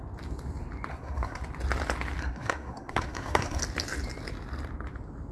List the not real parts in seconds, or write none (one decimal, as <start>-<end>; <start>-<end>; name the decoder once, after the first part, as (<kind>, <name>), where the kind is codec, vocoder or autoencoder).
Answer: 0.9-1.4 (codec, SNAC); 2.2-3.6